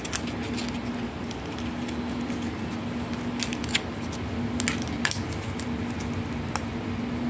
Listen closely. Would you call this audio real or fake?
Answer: real